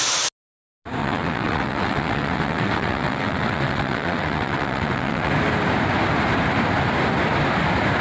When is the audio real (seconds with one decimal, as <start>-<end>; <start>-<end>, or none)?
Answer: 0.0-1.0; 5.3-8.0